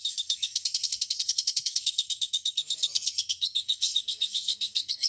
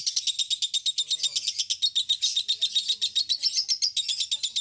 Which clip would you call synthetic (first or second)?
first